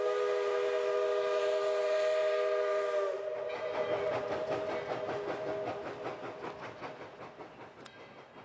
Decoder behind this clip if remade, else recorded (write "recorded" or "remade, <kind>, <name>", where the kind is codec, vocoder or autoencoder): recorded